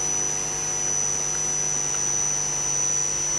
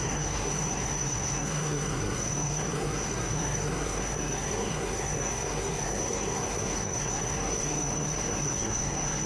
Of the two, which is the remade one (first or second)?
second